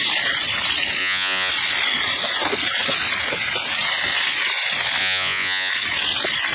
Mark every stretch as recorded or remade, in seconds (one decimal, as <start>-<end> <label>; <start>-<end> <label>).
0.0-1.0 recorded; 1.0-1.5 remade; 1.5-5.0 recorded; 5.0-5.7 remade; 5.7-6.5 recorded